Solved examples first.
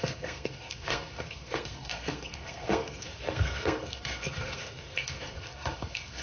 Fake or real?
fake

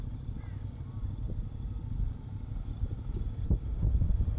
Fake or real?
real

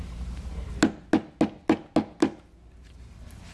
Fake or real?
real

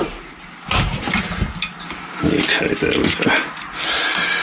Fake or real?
real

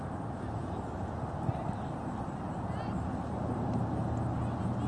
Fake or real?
real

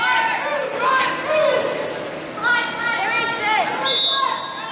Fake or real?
real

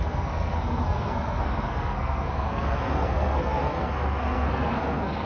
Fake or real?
fake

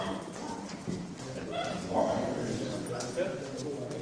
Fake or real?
real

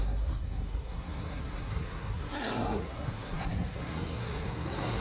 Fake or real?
fake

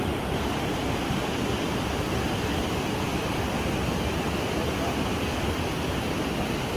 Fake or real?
real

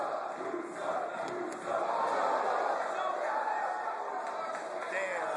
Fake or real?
real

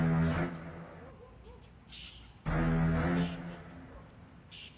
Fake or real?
real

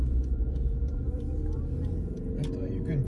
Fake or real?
real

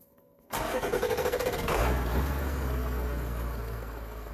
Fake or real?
fake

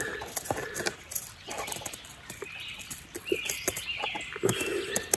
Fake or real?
real